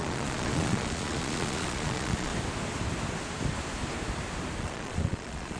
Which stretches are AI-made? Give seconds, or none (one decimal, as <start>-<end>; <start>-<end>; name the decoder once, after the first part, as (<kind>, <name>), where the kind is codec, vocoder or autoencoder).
0.0-2.3 (vocoder, Vocos); 4.6-5.6